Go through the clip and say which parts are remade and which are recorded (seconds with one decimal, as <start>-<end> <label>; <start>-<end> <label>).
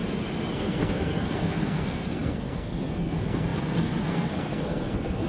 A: 0.0-0.5 recorded; 0.5-5.3 remade